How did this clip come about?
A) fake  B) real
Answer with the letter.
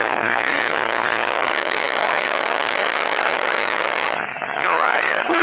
A